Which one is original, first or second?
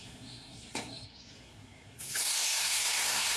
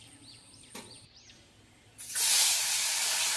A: second